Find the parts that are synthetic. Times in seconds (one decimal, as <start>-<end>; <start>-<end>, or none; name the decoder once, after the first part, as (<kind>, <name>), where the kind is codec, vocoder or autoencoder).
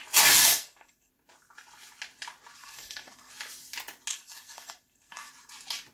0.4-1.1 (codec, SNAC); 2.6-3.3; 4.1-5.3